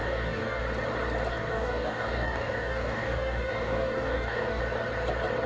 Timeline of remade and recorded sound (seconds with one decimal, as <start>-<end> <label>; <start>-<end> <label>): 0.0-0.6 remade; 0.6-1.3 recorded; 1.3-4.6 remade; 4.6-5.5 recorded